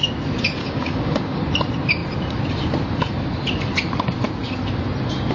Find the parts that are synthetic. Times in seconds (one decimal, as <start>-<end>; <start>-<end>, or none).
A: 0.6-1.4